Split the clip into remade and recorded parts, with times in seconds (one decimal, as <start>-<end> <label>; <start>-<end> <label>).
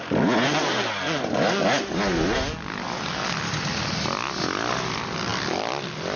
0.0-6.2 recorded